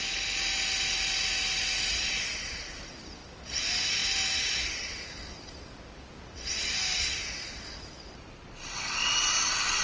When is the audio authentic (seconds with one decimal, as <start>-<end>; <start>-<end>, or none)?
0.0-9.8